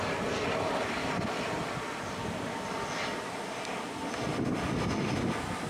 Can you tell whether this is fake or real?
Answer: real